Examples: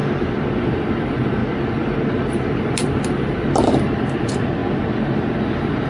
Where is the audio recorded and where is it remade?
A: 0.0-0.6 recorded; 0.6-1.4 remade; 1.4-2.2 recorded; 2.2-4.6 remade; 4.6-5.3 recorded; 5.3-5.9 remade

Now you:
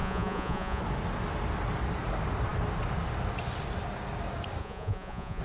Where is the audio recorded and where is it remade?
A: 0.0-0.8 remade; 0.8-4.6 recorded; 4.6-5.4 remade

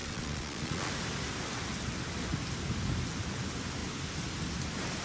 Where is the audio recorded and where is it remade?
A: 0.0-0.9 remade; 0.9-5.0 recorded

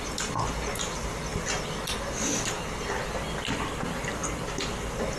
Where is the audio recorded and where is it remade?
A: 0.0-5.2 recorded